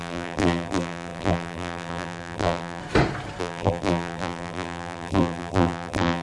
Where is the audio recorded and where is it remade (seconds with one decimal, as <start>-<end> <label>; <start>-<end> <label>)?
0.0-2.8 remade; 2.8-3.4 recorded; 3.4-6.2 remade